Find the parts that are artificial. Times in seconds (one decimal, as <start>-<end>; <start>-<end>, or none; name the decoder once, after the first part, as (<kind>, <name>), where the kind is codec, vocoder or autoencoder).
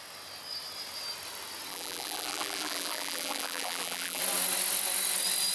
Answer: 1.7-4.2 (vocoder, BigVGAN v2)